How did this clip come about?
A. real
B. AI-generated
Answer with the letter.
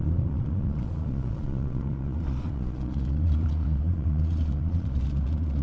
B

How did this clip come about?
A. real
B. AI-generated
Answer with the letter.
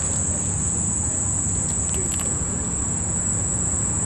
B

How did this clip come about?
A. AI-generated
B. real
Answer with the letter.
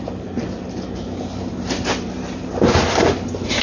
B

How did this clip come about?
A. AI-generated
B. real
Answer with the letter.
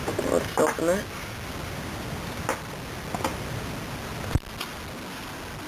B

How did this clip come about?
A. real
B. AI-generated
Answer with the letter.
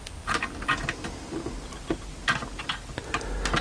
A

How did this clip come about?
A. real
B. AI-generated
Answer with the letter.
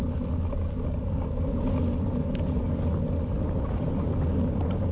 A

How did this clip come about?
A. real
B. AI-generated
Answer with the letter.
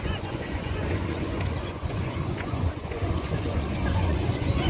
B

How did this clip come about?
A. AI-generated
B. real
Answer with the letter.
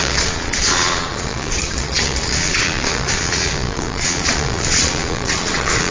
A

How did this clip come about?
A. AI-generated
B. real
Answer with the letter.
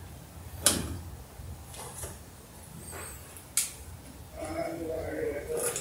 B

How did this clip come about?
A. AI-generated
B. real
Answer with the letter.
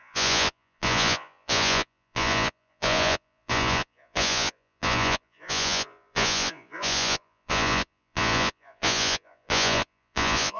A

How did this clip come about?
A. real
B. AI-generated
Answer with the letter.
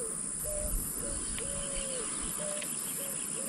A